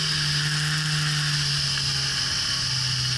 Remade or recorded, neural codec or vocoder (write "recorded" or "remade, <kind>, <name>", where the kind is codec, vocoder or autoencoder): recorded